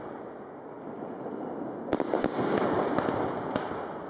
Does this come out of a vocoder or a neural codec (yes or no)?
no